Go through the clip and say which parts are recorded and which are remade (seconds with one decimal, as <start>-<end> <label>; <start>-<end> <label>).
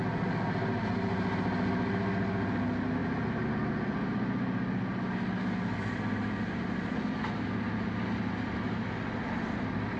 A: 0.0-10.0 recorded